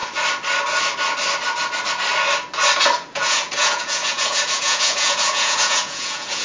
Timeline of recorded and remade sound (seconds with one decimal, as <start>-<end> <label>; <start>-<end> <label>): 0.0-3.1 recorded; 3.1-6.4 remade